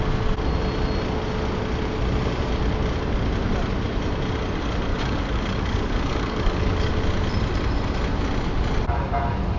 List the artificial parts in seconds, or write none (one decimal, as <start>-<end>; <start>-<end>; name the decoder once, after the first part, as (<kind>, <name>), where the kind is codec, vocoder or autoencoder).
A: 4.9-6.9 (codec, DAC)